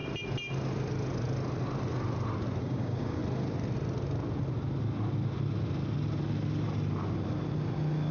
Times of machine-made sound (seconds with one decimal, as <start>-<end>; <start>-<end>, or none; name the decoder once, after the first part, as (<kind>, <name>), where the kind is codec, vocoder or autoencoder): 2.6-3.2 (codec, DAC)